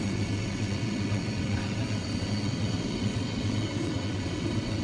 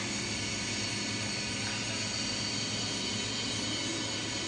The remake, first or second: first